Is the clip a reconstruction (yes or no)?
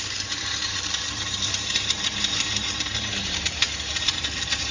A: yes